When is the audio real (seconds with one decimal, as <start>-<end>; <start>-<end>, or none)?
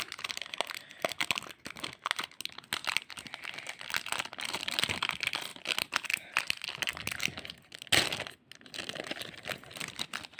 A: 0.0-10.4